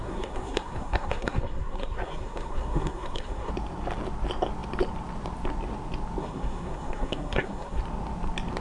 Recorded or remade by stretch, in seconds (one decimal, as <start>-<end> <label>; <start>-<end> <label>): 0.0-3.5 remade; 3.5-6.2 recorded; 6.2-7.8 remade; 7.8-8.6 recorded